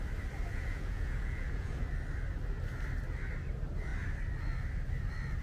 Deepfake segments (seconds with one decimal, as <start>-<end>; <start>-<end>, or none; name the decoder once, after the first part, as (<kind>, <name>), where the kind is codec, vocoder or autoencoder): 0.5-1.8 (vocoder, Vocos)